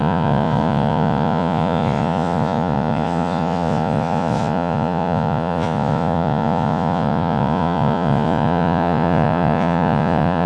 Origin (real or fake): fake